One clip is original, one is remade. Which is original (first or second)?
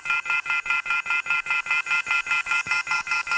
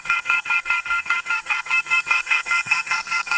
first